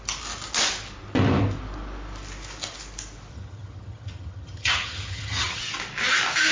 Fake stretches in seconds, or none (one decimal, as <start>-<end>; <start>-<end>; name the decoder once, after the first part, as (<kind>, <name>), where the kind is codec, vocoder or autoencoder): 3.3-5.6 (vocoder, HiFi-GAN)